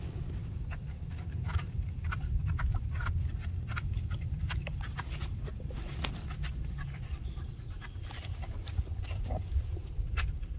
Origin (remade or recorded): recorded